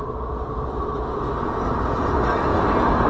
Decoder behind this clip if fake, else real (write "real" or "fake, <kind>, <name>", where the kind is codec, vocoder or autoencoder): real